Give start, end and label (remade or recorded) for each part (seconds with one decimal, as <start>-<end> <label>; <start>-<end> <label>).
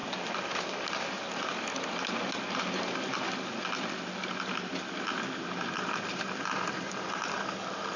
0.0-8.0 recorded